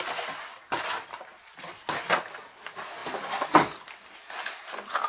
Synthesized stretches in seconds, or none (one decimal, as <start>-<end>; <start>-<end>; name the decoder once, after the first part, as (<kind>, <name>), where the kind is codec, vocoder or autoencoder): 1.3-2.5 (vocoder, BigVGAN v2)